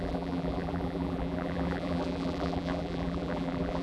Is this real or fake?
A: fake